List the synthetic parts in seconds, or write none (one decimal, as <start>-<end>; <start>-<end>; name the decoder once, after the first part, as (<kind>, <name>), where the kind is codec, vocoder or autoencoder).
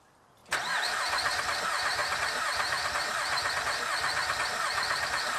2.0-3.5 (vocoder, BigVGAN v2); 4.5-5.4